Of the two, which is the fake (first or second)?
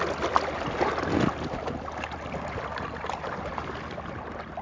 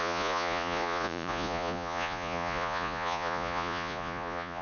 second